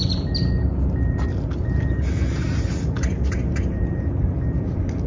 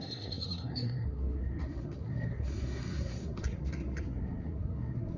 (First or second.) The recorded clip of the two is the first